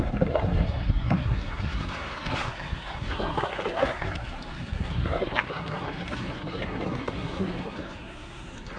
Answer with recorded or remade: remade